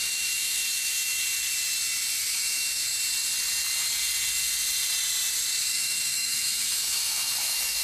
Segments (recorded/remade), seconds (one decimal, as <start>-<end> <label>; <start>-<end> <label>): 0.0-1.2 remade; 1.2-2.2 recorded; 2.2-2.9 remade; 2.9-5.6 recorded; 5.6-7.8 remade